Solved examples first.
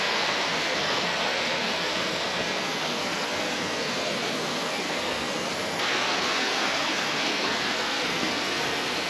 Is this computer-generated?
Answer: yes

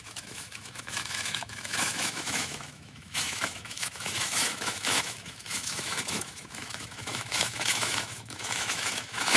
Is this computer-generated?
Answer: yes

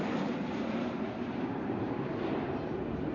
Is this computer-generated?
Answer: yes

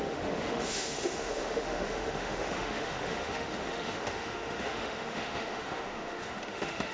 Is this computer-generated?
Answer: yes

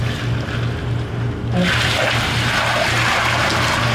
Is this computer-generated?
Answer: no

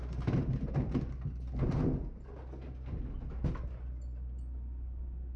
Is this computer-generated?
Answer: no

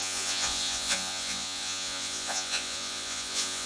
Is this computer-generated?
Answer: yes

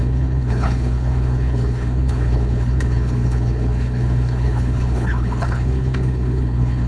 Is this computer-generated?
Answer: yes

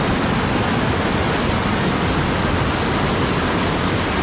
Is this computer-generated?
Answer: no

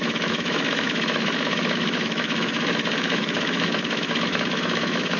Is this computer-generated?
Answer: yes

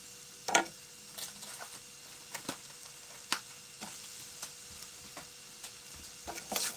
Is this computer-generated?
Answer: no